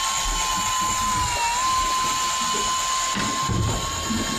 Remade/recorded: recorded